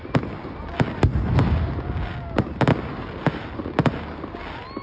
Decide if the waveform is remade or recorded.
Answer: recorded